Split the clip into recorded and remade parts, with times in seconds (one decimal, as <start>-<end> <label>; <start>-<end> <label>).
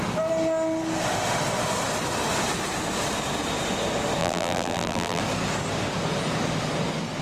0.0-4.2 recorded; 4.2-5.2 remade; 5.2-7.2 recorded